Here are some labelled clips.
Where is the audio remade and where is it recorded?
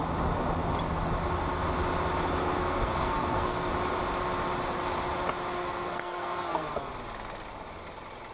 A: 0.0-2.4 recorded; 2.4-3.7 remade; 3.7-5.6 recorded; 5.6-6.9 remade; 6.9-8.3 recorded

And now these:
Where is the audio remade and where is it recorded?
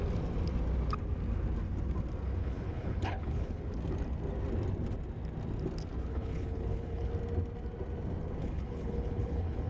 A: 0.0-2.4 recorded; 2.4-3.6 remade; 3.6-6.1 recorded; 6.1-7.1 remade; 7.1-8.4 recorded; 8.4-9.7 remade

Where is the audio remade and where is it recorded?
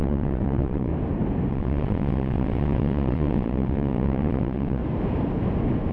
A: 0.0-0.9 remade; 0.9-1.5 recorded; 1.5-4.8 remade; 4.8-5.9 recorded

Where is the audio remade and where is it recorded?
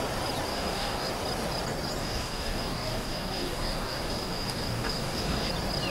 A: 0.0-0.5 recorded; 0.5-1.1 remade; 1.1-2.0 recorded; 2.0-5.5 remade; 5.5-5.9 recorded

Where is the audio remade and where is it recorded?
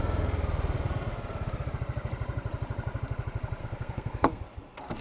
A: 0.0-3.6 recorded; 3.6-4.4 remade; 4.4-5.0 recorded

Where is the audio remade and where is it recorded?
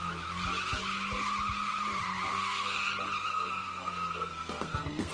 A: 0.0-2.3 recorded; 2.3-2.9 remade; 2.9-3.3 recorded; 3.3-5.1 remade